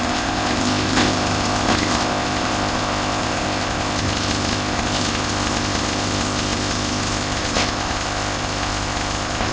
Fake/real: fake